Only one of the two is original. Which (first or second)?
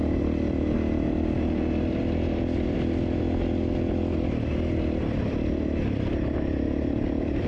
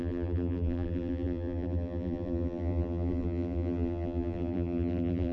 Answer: first